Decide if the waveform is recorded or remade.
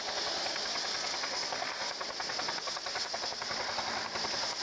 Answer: recorded